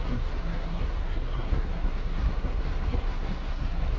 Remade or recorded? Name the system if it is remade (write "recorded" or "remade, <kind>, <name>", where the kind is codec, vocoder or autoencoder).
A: remade, codec, SNAC